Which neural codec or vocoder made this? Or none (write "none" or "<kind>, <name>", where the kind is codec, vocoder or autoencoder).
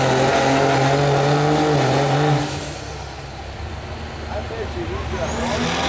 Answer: none